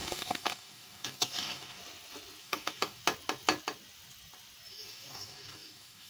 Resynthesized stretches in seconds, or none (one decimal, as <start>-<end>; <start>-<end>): 0.0-1.8; 2.4-3.0; 4.7-6.1